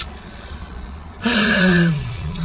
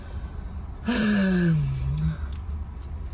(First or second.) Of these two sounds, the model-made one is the first